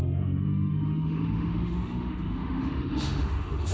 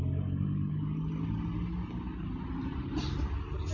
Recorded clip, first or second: second